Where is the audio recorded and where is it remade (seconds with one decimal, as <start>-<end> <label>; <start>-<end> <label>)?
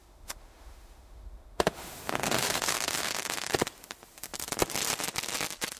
0.0-3.5 remade; 3.5-5.8 recorded